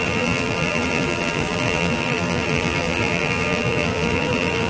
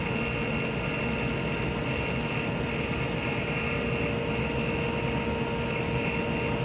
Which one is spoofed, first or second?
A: first